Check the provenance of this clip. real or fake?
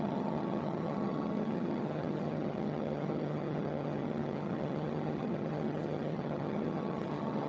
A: fake